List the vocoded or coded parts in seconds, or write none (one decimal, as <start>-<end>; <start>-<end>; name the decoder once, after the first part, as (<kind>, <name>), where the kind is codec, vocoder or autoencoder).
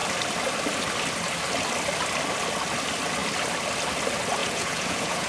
4.4-5.3 (vocoder, Vocos)